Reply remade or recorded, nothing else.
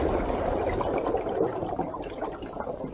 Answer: remade